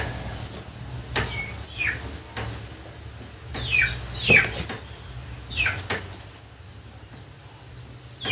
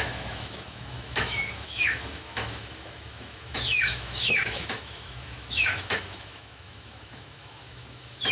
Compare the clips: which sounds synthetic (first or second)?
second